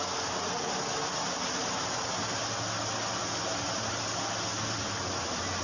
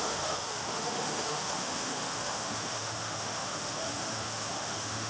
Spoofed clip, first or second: second